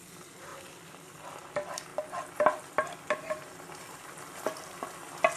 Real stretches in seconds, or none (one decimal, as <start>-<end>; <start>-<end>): 0.0-0.5; 1.4-1.9; 4.6-5.4